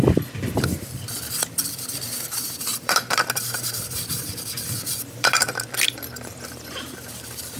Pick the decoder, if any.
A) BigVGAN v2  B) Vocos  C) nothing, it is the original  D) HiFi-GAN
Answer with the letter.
A